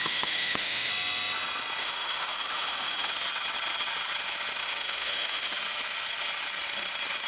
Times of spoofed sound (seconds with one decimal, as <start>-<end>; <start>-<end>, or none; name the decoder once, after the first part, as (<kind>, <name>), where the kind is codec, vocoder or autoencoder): 0.0-0.9 (autoencoder, DAC-VAE); 1.8-3.1; 4.6-5.5